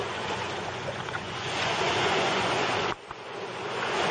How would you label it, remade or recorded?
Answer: remade